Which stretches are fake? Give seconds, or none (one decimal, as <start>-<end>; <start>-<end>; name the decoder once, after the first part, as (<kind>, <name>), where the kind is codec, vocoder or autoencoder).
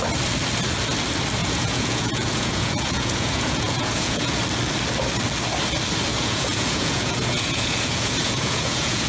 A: 1.4-4.4 (vocoder, Vocos); 6.1-9.1